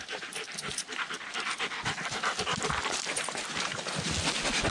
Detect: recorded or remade recorded